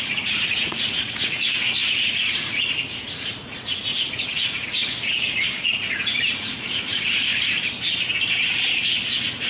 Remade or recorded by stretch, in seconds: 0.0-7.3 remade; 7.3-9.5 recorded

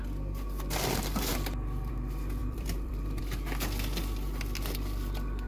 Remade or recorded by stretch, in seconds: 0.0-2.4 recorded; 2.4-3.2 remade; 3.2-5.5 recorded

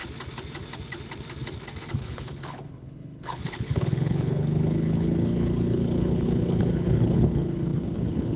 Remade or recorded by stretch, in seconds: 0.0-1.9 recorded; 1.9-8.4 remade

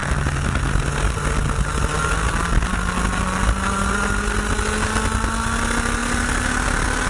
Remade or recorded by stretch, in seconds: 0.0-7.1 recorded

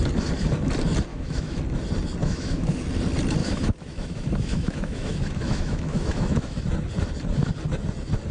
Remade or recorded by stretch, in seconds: 0.0-1.1 recorded; 1.1-1.6 remade; 1.6-2.2 recorded; 2.2-2.8 remade; 2.8-3.4 recorded; 3.4-6.6 remade; 6.6-8.3 recorded

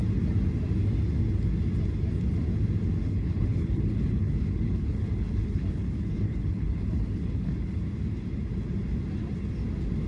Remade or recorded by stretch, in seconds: 0.0-3.0 recorded; 3.0-7.8 remade; 7.8-10.1 recorded